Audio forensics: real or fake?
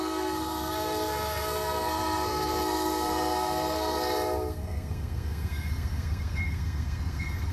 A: fake